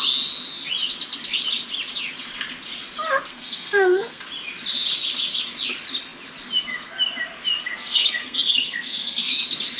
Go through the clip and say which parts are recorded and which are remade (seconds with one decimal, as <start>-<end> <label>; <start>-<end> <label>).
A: 0.0-3.3 recorded; 3.3-4.2 remade; 4.2-7.6 recorded; 7.6-9.3 remade; 9.3-9.8 recorded